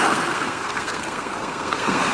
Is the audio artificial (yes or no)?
yes